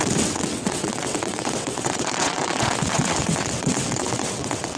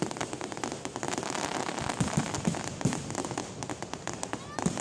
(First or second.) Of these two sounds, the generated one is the first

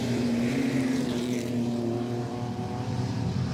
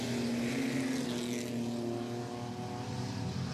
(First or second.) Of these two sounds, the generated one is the first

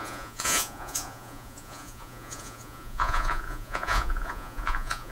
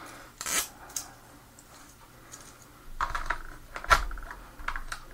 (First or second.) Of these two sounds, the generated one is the first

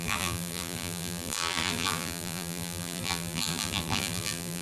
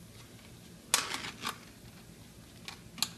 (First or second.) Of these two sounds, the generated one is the first